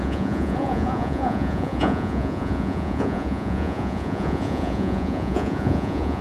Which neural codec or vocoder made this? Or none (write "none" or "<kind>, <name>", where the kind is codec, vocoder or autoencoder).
vocoder, Vocos